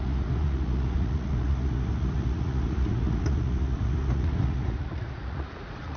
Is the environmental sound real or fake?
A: fake